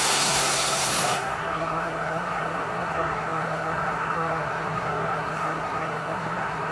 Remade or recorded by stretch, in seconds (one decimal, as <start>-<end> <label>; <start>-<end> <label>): 0.0-6.7 remade